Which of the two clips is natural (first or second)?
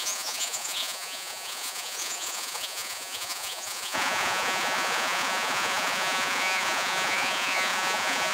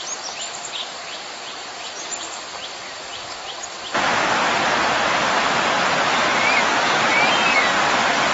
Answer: second